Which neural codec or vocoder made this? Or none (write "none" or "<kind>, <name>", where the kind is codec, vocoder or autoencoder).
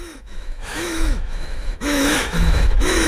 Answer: autoencoder, DAC-VAE